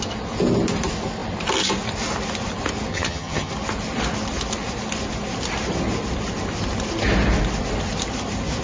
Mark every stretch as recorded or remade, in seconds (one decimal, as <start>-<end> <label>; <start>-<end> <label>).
0.0-2.9 recorded; 2.9-3.5 remade; 3.5-8.6 recorded